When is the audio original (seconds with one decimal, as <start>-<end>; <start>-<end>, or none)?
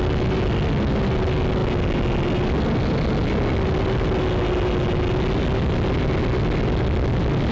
0.0-7.5